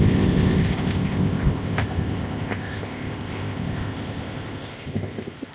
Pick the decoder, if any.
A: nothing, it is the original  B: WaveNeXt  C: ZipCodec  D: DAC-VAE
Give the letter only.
C